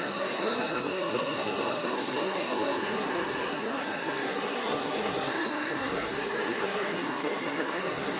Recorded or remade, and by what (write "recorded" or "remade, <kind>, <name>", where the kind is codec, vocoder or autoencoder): remade, codec, SNAC